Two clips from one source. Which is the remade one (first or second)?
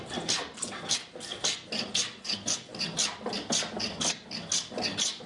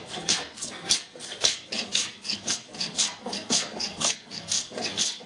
second